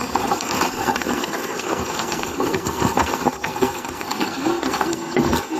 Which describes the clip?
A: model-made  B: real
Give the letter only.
A